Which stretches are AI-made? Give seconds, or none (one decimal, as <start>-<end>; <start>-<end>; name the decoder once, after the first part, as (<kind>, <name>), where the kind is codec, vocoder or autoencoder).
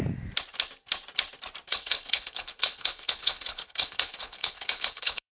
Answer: 1.7-5.3 (codec, HILCodec)